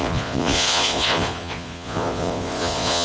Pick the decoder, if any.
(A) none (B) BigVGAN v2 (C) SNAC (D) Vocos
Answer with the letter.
D